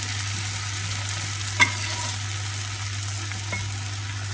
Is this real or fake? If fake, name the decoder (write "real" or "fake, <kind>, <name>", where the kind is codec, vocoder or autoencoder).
real